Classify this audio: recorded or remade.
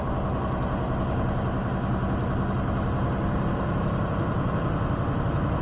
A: recorded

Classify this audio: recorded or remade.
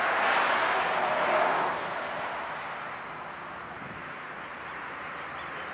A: recorded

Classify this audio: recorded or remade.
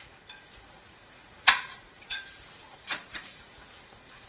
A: remade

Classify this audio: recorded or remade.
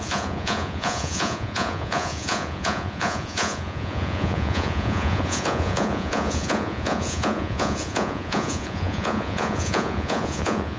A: remade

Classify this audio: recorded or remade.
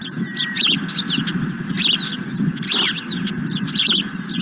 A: recorded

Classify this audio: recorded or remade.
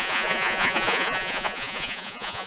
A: remade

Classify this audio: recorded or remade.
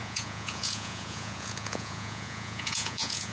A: remade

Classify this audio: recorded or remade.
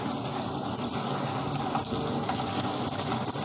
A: recorded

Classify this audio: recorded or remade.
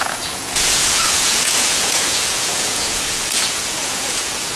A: remade